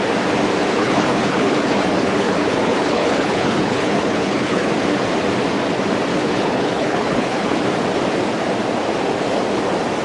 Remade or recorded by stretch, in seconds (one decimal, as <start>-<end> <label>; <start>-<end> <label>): 0.0-0.6 recorded; 0.6-4.7 remade; 4.7-6.1 recorded; 6.1-7.6 remade; 7.6-10.0 recorded